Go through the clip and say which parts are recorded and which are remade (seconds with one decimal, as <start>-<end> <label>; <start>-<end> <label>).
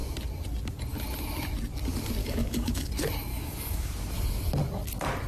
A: 0.0-2.2 recorded; 2.2-2.9 remade; 2.9-3.3 recorded; 3.3-3.9 remade; 3.9-5.3 recorded